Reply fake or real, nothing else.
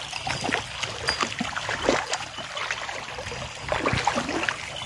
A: real